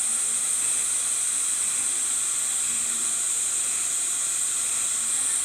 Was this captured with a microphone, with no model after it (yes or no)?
yes